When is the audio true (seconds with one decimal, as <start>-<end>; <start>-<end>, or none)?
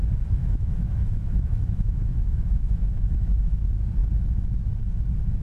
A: 0.0-0.4; 3.6-5.4